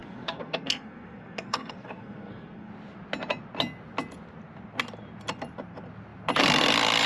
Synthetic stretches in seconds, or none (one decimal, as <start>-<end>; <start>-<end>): 0.0-2.7